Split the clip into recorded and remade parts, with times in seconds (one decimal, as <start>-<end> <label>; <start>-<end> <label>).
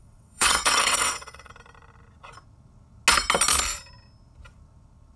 0.0-1.5 remade; 1.5-5.2 recorded